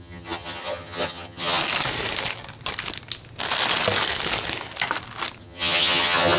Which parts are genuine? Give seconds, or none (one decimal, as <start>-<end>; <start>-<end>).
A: 1.6-5.4